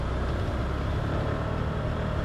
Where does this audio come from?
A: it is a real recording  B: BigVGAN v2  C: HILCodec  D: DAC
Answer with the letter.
A